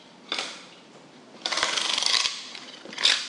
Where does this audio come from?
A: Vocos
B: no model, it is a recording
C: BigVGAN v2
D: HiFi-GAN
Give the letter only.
B